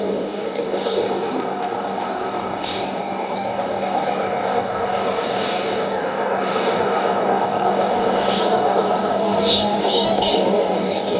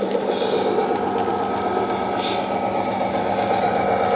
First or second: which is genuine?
second